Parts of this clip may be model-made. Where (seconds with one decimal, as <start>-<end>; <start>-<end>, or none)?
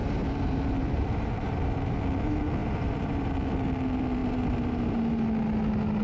0.0-2.0; 2.6-3.3; 4.2-5.0